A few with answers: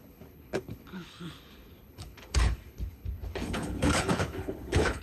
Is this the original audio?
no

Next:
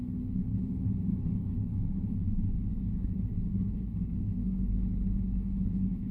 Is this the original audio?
no